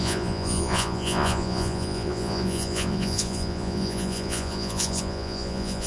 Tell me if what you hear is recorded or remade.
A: remade